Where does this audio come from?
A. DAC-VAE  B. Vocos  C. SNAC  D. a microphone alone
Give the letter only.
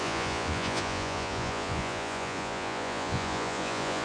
B